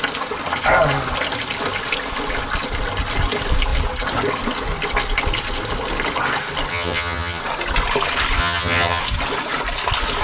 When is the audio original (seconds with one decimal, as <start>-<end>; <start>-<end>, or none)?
0.0-6.7; 7.4-8.4; 9.0-10.2

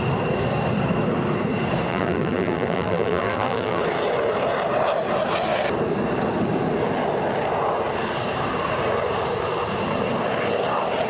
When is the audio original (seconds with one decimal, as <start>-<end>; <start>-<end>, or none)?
0.0-1.9; 3.8-11.1